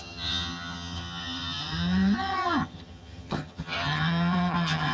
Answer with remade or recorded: remade